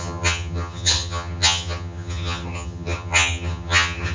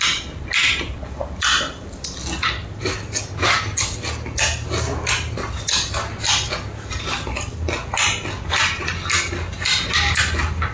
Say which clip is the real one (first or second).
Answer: second